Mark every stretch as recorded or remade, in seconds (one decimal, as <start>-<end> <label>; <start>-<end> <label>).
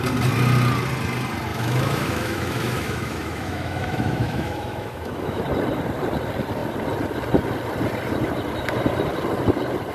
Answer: 0.0-1.5 recorded; 1.5-5.4 remade; 5.4-9.9 recorded